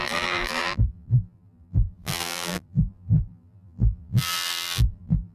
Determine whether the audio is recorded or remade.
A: remade